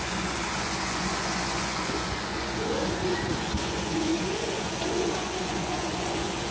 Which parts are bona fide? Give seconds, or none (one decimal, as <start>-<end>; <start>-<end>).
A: none